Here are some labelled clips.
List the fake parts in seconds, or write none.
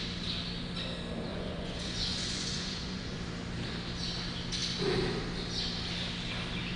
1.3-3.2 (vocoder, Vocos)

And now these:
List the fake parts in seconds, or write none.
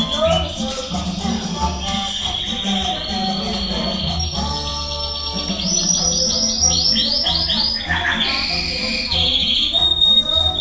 1.3-2.4 (codec, SNAC)